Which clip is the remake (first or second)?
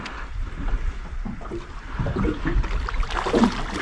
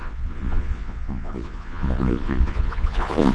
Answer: second